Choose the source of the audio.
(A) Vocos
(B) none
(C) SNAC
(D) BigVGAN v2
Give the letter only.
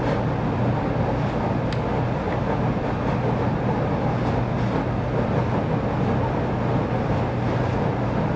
B